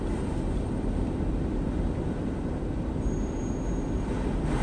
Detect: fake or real real